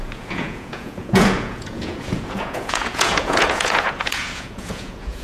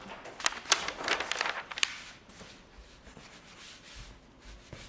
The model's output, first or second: first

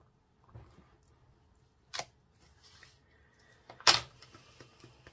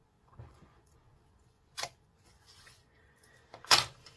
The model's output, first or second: second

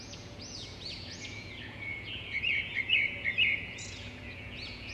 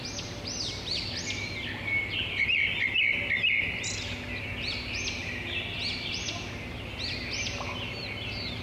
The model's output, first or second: first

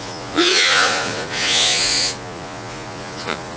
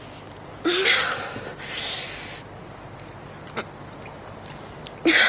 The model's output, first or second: first